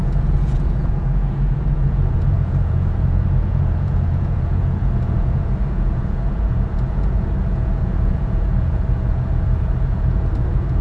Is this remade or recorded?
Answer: remade